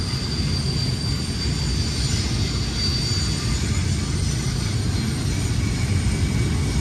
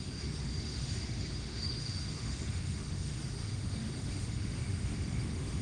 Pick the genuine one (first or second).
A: first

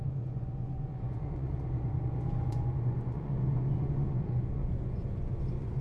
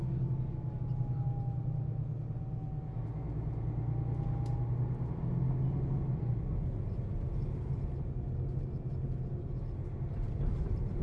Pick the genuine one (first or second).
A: second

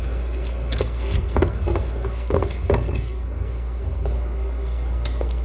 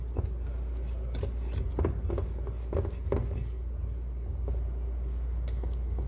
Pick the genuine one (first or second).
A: second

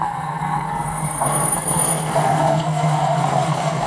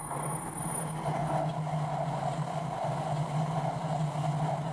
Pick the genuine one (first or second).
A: second